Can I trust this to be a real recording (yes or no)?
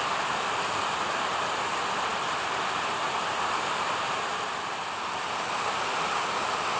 yes